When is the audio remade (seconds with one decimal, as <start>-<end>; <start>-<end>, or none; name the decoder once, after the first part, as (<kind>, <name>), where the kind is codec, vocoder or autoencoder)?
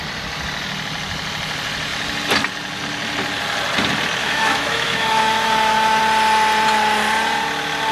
4.2-6.0 (autoencoder, DAC-VAE)